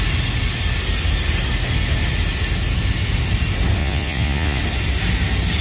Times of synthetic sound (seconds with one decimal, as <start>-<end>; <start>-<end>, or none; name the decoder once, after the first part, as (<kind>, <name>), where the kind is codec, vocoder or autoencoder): 3.8-4.6 (vocoder, Vocos)